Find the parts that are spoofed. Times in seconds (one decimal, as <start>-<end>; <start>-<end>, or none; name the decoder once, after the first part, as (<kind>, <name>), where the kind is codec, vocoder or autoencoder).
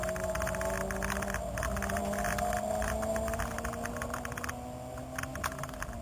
none